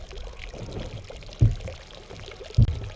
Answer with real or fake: real